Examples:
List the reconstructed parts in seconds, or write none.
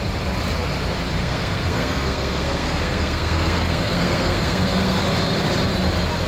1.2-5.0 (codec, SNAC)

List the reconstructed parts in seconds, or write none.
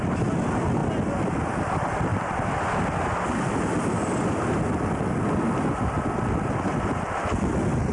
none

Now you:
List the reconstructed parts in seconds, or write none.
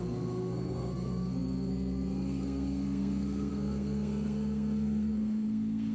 0.0-5.9 (codec, SNAC)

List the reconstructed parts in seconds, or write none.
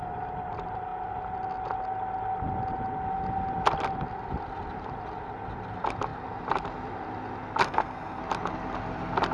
7.6-8.2 (codec, SNAC)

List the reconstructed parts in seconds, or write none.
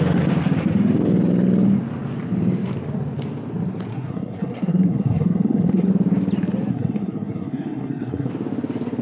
3.9-5.9 (codec, SNAC); 6.7-8.3